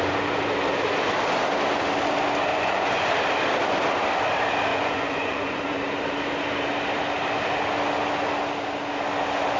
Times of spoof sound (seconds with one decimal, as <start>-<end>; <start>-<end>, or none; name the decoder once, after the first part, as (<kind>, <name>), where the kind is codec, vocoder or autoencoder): 2.5-3.1 (vocoder, Vocos); 4.7-5.8